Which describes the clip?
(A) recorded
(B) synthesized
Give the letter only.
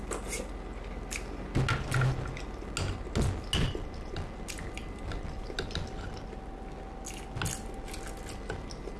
A